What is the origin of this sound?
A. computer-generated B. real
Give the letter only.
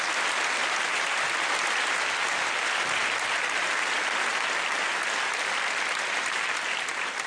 B